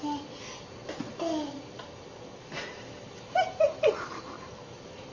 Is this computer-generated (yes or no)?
no